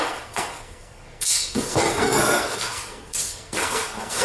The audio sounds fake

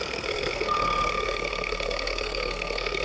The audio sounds fake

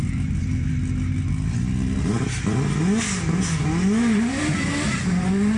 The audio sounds real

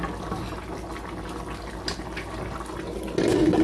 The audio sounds real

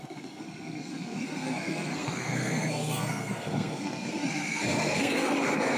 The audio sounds fake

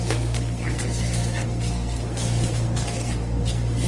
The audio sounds fake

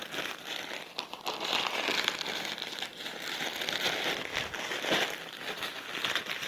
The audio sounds real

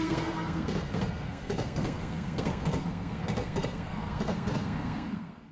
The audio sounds fake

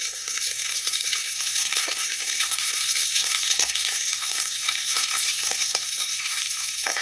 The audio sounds fake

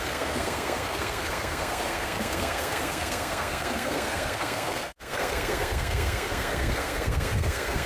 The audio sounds fake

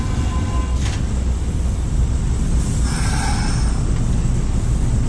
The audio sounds real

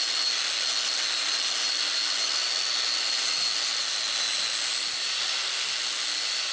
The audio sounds real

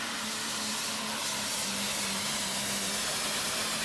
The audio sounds real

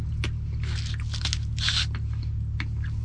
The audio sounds real